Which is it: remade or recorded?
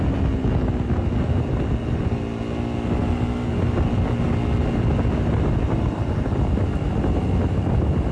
recorded